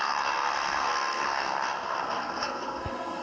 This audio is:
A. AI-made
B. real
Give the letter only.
A